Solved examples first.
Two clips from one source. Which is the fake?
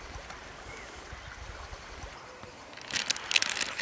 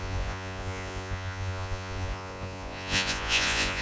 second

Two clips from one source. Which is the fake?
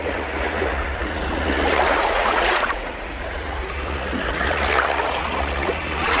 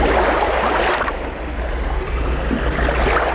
first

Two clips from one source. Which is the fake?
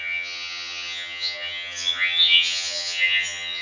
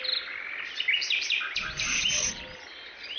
first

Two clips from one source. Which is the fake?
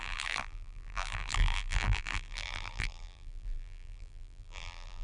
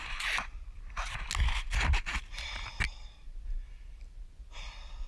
first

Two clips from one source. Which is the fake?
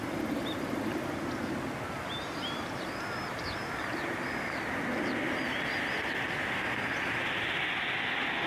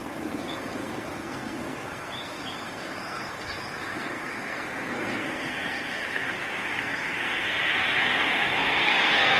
second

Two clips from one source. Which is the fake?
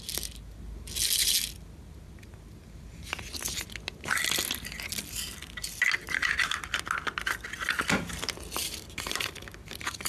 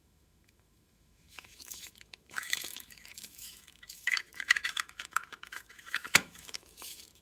second